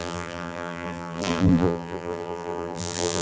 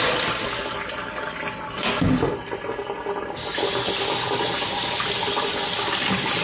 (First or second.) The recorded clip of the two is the second